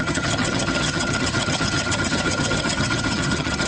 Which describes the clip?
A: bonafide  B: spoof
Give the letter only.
B